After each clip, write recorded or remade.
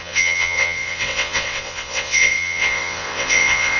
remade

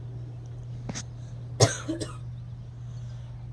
recorded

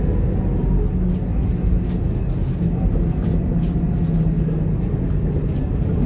recorded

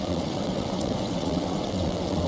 remade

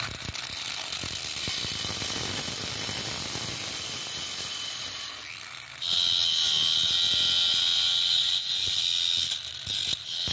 recorded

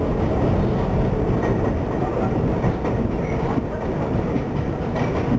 recorded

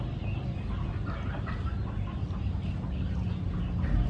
recorded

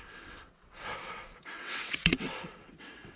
remade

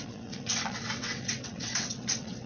remade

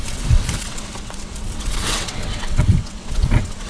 remade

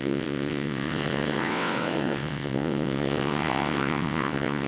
remade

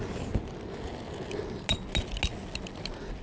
recorded